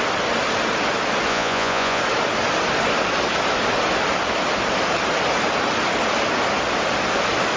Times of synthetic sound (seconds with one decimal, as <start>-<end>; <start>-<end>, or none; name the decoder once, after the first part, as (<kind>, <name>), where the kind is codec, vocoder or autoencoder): 1.3-2.0 (vocoder, Vocos)